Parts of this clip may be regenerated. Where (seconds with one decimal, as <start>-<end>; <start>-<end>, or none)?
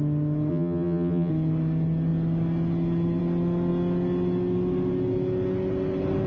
0.5-1.3